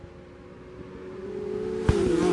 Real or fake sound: real